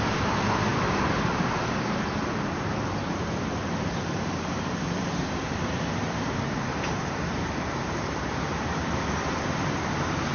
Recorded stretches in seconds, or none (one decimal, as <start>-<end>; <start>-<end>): none